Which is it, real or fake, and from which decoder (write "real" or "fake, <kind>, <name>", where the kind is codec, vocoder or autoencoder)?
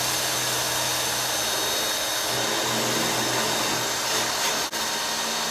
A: real